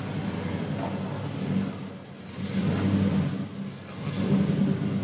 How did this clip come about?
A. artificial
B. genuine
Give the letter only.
B